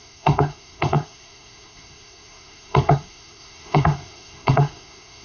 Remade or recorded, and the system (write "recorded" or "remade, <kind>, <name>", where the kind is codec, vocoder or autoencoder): remade, codec, SNAC